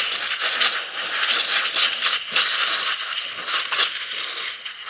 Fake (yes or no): no